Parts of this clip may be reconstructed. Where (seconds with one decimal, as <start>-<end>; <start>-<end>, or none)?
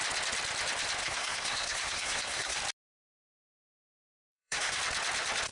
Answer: 1.0-2.6; 3.5-4.8